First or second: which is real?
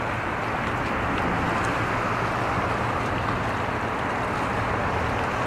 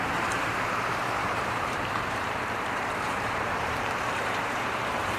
first